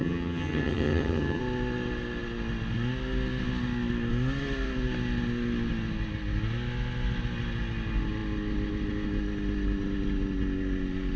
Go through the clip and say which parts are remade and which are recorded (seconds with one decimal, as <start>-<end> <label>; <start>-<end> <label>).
0.0-1.4 remade; 1.4-11.2 recorded

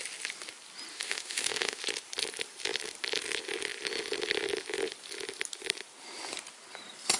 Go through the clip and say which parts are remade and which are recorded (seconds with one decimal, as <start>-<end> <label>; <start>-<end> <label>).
0.0-0.9 recorded; 0.9-1.8 remade; 1.8-7.2 recorded

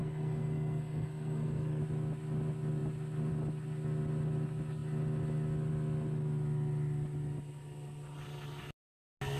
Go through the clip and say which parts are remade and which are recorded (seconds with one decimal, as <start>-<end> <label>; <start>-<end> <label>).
0.0-1.8 remade; 1.8-9.4 recorded

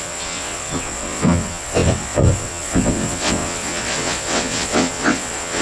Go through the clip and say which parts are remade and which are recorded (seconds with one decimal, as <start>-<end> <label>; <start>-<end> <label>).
0.0-5.6 remade

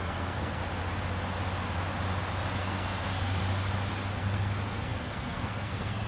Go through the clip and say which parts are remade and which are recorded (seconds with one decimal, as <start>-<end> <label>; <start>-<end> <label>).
0.0-0.6 remade; 0.6-2.6 recorded; 2.6-3.4 remade; 3.4-4.2 recorded; 4.2-6.1 remade

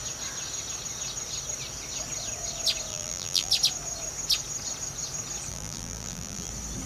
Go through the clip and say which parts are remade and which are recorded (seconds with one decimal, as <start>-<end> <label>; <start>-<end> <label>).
0.0-2.9 recorded; 2.9-3.5 remade; 3.5-5.5 recorded; 5.5-6.5 remade; 6.5-6.9 recorded